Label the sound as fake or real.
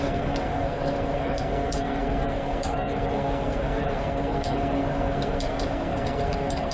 fake